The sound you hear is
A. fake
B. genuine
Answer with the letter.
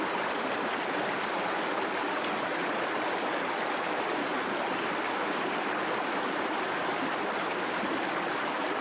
B